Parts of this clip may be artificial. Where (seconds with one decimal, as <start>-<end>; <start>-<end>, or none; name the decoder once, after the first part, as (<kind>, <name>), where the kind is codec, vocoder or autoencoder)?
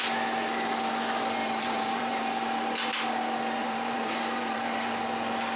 1.4-2.1 (vocoder, BigVGAN v2); 3.6-4.9